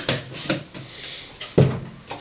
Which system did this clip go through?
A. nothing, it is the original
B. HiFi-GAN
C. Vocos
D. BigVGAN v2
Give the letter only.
A